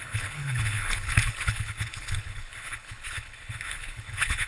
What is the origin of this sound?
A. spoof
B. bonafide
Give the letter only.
A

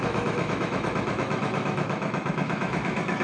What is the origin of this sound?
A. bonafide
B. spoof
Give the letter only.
B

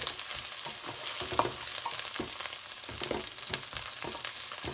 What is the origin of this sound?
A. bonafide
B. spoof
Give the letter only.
A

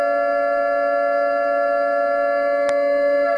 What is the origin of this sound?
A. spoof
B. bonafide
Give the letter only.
B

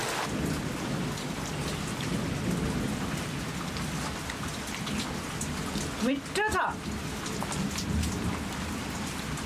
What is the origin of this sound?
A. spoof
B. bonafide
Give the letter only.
B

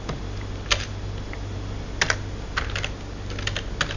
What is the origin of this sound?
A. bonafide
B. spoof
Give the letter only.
A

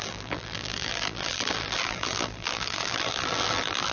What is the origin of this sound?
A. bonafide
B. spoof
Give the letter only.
B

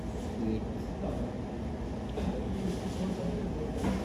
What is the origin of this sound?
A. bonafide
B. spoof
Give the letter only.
A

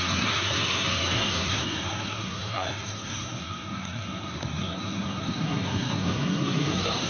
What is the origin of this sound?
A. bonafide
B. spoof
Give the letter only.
B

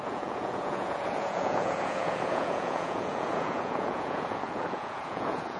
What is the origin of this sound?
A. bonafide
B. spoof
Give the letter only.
B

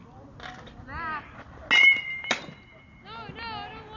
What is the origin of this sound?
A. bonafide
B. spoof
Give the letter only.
A